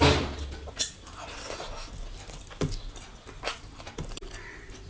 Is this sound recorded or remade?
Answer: recorded